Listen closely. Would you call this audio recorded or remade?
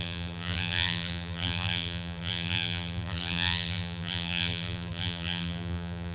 remade